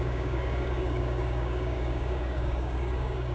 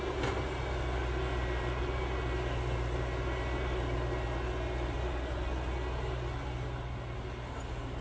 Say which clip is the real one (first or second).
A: second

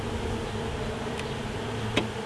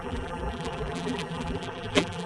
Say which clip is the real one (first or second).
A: first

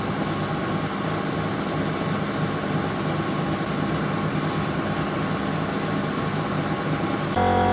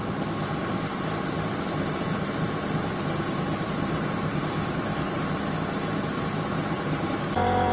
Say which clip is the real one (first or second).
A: first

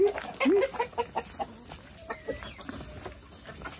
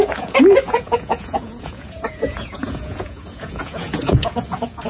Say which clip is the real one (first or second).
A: first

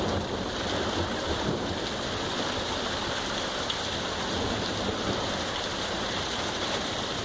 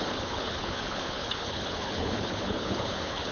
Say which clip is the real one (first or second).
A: first